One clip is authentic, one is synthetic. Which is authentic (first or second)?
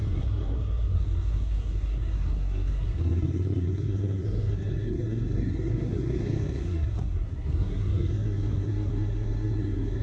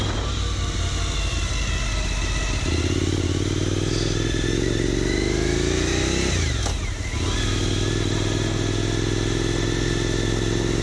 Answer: second